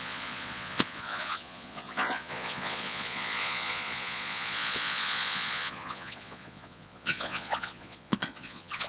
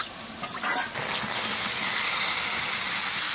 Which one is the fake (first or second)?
first